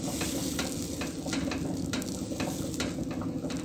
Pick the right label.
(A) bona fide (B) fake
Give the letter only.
A